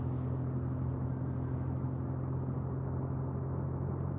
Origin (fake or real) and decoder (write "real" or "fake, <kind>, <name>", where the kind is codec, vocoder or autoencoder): real